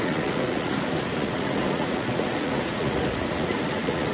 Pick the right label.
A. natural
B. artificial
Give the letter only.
B